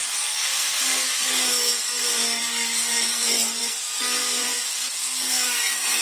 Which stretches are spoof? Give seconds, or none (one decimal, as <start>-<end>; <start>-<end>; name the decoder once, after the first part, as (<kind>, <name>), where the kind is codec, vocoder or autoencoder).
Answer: 0.0-6.0 (codec, SNAC)